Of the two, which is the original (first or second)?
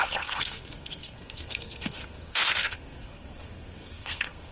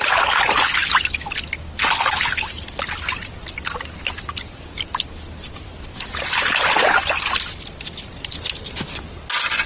second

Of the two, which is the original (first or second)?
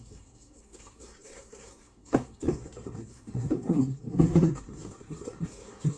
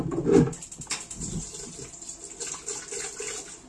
second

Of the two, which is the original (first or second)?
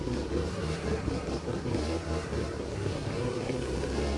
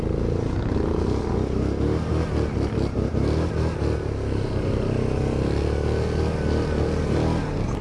second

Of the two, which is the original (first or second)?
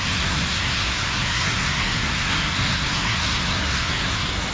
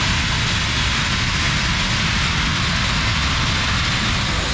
second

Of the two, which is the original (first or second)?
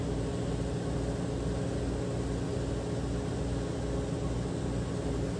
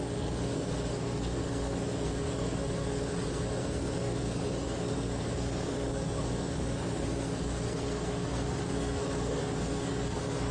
first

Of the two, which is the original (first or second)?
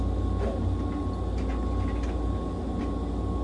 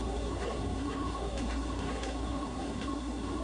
first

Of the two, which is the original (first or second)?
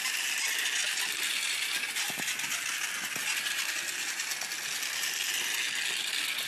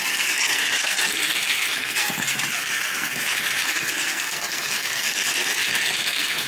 first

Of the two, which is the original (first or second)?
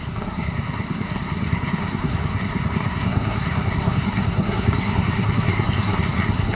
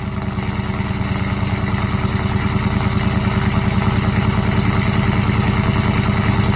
second